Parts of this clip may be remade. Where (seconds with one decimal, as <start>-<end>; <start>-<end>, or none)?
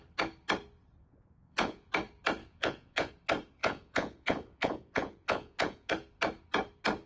1.0-1.9; 2.4-3.1; 3.6-5.9